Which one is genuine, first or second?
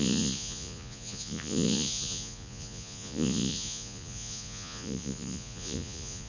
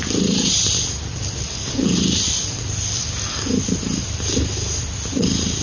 second